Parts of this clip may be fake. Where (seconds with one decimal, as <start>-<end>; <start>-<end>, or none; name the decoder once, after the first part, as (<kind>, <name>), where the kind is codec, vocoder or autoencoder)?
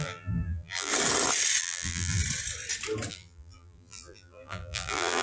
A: 0.0-0.9 (vocoder, BigVGAN v2); 1.6-2.2; 3.1-5.2